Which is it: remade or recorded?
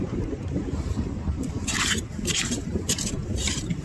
remade